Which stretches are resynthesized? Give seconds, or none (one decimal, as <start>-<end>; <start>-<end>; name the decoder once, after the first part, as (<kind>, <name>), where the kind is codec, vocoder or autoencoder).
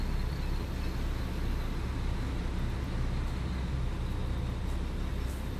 none